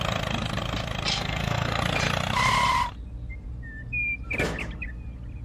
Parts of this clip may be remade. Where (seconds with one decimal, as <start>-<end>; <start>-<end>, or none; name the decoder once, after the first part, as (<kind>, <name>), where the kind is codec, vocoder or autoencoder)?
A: 1.1-1.8 (codec, SNAC)